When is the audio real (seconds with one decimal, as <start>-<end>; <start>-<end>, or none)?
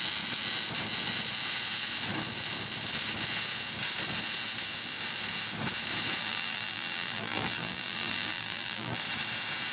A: 0.0-6.2; 9.0-9.7